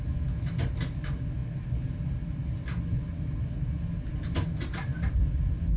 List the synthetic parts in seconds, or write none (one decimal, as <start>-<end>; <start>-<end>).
none